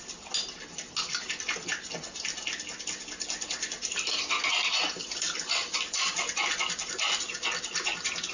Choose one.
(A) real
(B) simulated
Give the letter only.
A